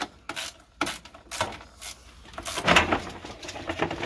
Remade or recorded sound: recorded